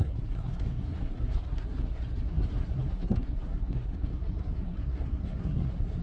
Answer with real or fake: fake